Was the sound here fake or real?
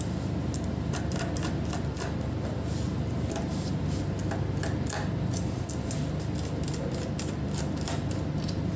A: real